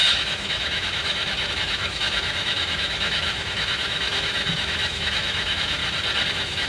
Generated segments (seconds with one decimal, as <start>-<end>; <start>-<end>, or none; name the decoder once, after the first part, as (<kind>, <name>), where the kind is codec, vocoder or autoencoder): 0.0-5.8 (autoencoder, DAC-VAE); 6.3-6.7